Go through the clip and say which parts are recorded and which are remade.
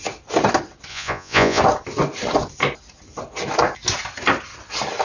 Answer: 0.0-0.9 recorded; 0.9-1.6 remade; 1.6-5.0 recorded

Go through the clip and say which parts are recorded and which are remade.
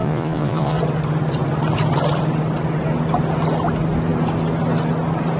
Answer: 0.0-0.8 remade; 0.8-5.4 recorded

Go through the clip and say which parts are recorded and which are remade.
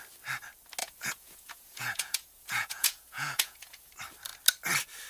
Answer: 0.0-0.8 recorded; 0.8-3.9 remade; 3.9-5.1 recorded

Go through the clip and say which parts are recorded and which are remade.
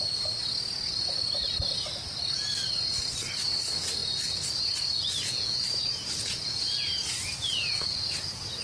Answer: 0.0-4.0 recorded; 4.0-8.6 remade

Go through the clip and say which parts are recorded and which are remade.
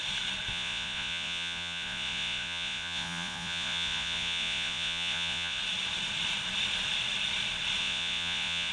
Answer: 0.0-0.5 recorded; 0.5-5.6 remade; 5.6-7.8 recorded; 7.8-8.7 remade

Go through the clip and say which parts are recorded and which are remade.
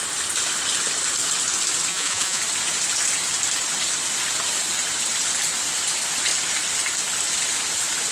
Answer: 0.0-1.9 recorded; 1.9-2.4 remade; 2.4-8.1 recorded